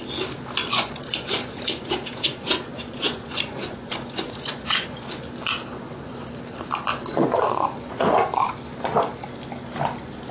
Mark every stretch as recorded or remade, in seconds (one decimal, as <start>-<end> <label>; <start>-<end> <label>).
0.0-0.6 recorded; 0.6-5.0 remade; 5.0-5.7 recorded; 5.7-6.3 remade; 6.3-6.9 recorded; 6.9-8.5 remade; 8.5-10.3 recorded